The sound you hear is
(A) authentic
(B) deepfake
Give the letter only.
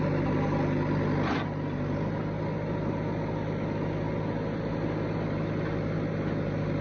A